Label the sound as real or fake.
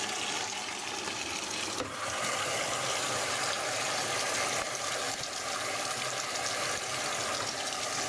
real